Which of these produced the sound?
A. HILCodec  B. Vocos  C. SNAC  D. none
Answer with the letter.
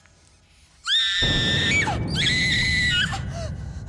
D